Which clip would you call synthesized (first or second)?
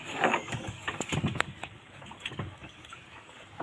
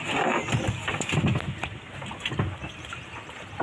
first